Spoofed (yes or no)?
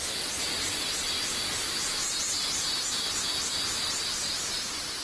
no